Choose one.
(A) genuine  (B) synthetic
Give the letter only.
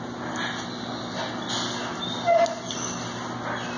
A